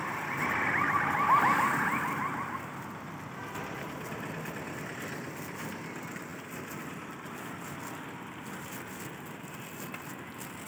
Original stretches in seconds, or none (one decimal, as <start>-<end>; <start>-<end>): 0.0-10.7